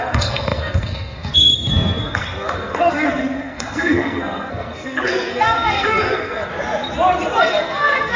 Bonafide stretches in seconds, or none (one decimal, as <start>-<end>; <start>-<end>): 6.5-7.4